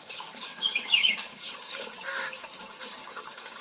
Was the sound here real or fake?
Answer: fake